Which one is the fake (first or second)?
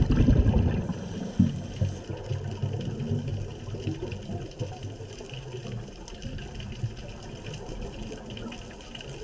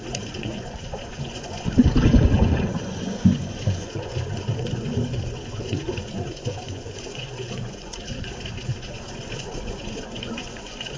second